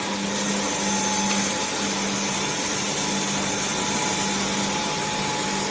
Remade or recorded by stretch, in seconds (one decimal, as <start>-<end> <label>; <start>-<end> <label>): 0.0-5.7 recorded